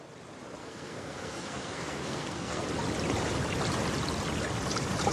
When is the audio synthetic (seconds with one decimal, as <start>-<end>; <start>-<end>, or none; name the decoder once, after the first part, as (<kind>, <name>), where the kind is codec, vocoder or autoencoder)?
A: 0.6-2.7 (codec, SNAC)